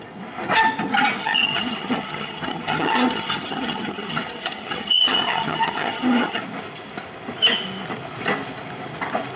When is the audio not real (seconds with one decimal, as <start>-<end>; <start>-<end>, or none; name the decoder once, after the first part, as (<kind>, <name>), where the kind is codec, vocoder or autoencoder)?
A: 1.2-6.4 (vocoder, HiFi-GAN)